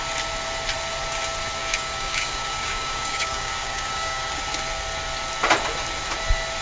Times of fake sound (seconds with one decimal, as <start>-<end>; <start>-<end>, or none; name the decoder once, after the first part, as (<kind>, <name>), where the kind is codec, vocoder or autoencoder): 1.6-4.4 (codec, DAC)